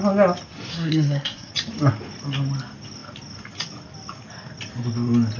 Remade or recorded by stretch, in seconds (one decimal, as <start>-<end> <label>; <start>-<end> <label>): 0.0-0.7 recorded; 0.7-1.5 remade; 1.5-5.4 recorded